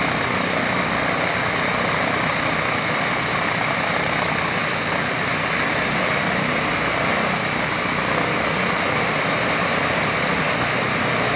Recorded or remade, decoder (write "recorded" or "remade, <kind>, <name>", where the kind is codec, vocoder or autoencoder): recorded